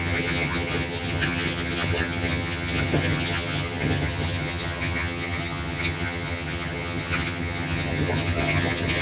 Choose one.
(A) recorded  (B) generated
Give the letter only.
B